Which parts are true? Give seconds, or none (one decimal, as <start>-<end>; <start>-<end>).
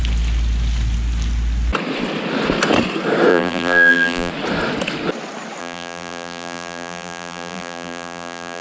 0.0-3.3; 4.3-5.6